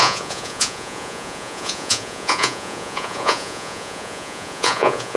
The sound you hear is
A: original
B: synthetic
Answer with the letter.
B